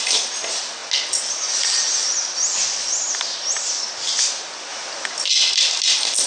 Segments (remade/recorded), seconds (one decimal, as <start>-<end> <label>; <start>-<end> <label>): 0.0-6.3 recorded